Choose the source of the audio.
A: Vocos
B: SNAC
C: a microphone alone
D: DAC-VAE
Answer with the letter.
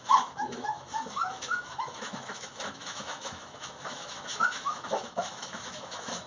D